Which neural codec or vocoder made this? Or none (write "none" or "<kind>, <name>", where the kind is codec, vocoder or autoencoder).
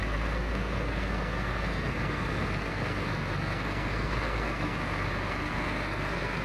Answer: codec, SNAC